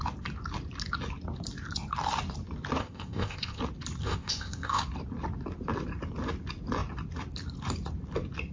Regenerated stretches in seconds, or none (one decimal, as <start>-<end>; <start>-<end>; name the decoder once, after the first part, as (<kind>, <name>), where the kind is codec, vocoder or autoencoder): 2.8-3.6 (codec, ZipCodec); 4.0-4.8